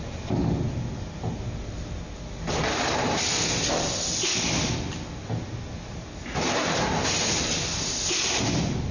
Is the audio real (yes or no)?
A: yes